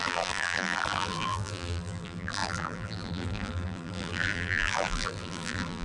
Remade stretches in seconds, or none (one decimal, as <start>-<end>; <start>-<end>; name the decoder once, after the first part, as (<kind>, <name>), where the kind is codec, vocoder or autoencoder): 0.0-5.8 (vocoder, BigVGAN v2)

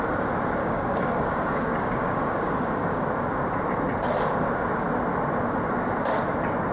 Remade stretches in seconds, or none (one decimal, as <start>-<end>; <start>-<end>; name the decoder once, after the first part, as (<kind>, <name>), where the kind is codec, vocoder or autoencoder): 0.6-3.1 (codec, DAC)

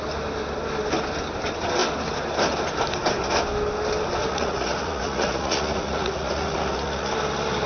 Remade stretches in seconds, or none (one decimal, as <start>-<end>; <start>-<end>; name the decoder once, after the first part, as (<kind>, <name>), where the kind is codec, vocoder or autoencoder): 4.2-7.1 (vocoder, Vocos)

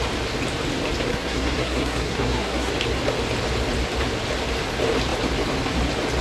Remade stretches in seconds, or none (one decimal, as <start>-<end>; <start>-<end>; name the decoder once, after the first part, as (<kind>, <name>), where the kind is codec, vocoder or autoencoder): 1.1-2.7 (codec, SNAC)

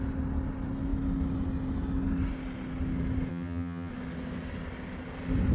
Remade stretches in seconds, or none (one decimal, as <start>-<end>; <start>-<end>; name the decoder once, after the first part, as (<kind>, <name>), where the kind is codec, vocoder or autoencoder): 3.3-3.9 (vocoder, HiFi-GAN)

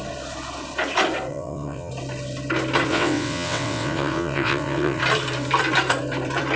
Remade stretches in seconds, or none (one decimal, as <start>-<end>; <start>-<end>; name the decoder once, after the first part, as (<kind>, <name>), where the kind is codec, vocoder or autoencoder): 1.3-1.9 (vocoder, WaveNeXt); 2.9-5.0

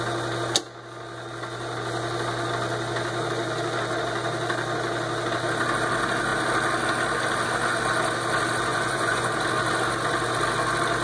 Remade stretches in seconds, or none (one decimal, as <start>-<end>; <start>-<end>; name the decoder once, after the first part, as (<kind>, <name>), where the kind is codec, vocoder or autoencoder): 8.7-9.3 (vocoder, Vocos)

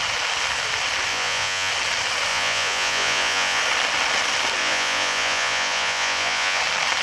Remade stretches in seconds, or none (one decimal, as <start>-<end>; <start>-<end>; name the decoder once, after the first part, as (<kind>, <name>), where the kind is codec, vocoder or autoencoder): 1.1-1.7 (vocoder, Vocos); 2.3-3.6; 4.6-6.6